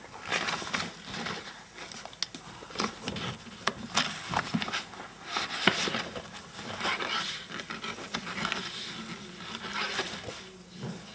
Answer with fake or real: real